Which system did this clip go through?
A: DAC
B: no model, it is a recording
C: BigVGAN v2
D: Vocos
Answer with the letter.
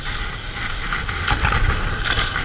B